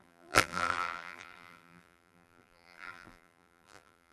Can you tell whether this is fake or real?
fake